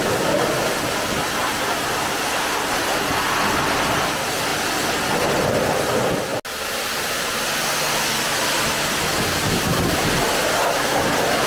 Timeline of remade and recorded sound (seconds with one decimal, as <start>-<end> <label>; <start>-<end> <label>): 0.0-11.5 recorded